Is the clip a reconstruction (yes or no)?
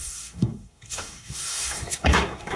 yes